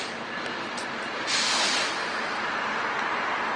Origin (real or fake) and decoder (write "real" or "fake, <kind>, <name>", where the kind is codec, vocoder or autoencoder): fake, vocoder, BigVGAN v2